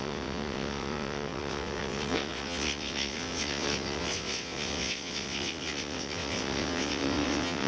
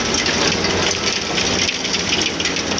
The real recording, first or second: second